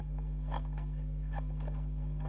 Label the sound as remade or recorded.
remade